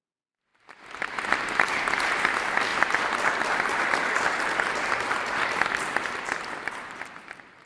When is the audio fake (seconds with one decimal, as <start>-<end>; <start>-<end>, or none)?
0.5-1.4; 2.7-7.2